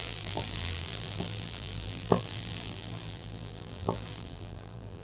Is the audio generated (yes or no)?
yes